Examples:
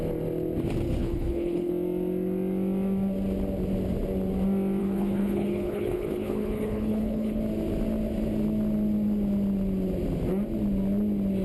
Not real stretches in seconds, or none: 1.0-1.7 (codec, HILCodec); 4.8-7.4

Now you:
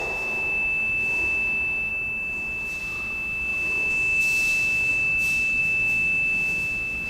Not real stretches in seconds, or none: 0.0-1.9 (autoencoder, DAC-VAE); 2.8-4.9; 5.6-7.1

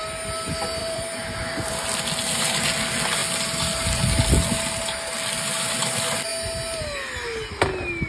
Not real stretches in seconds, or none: 0.8-1.8 (vocoder, BigVGAN v2)

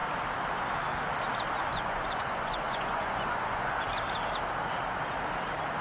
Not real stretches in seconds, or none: 1.7-3.8 (vocoder, Vocos)

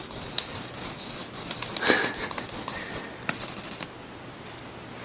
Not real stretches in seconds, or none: none

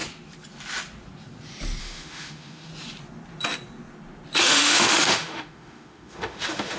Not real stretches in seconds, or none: 1.8-2.7 (autoencoder, DAC-VAE); 4.4-6.8